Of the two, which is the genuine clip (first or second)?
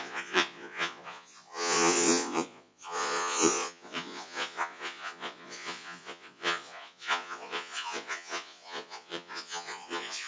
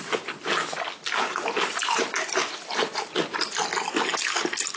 second